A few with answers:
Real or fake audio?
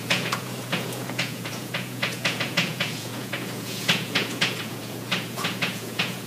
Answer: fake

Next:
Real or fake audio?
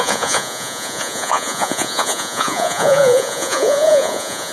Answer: fake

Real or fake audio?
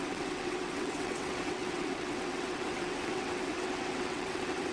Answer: fake